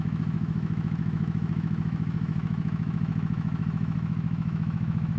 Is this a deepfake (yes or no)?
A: yes